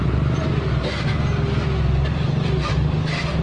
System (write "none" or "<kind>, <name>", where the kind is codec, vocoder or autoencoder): none